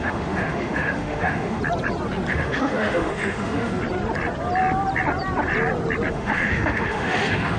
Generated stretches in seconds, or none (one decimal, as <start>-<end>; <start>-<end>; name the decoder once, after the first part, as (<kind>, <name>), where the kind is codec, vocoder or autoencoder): 0.0-1.6 (autoencoder, DAC-VAE); 2.3-3.7; 6.1-7.6